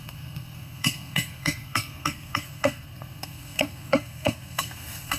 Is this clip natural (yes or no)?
no